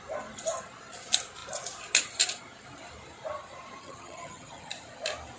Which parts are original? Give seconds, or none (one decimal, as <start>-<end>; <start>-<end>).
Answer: 0.0-3.8; 4.7-5.4